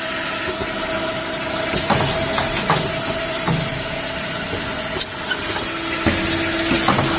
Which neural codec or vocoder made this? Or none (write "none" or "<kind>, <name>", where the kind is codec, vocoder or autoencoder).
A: none